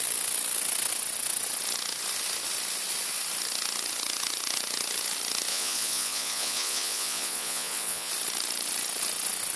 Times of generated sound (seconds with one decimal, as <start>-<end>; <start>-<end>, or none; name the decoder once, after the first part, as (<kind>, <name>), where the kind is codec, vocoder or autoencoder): 5.5-8.1 (vocoder, Vocos)